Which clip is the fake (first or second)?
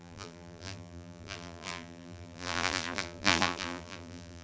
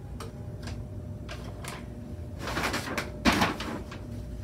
first